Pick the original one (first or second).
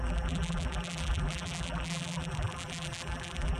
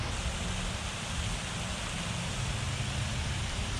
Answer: second